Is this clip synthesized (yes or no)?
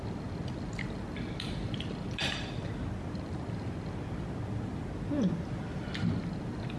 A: no